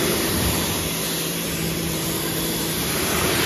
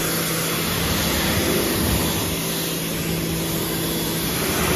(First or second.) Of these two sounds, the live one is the second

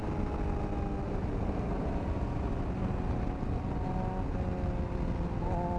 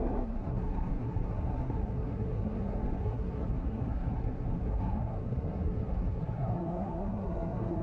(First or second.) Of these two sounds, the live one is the first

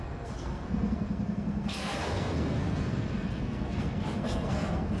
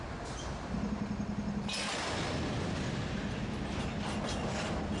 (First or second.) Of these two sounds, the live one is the second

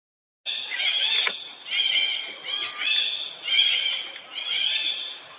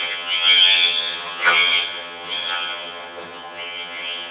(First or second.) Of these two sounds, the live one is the first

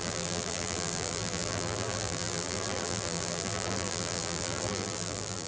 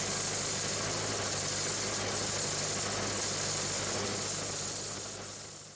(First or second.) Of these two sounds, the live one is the second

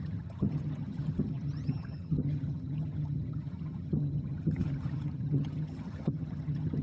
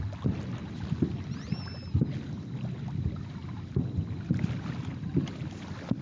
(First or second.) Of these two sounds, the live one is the second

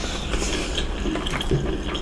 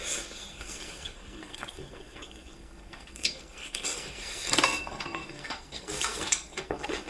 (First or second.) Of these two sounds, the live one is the first